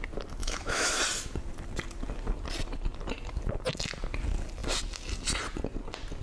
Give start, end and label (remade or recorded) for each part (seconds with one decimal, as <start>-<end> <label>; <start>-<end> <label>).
0.0-0.4 recorded; 0.4-1.0 remade; 1.0-6.2 recorded